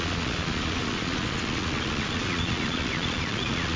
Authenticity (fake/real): fake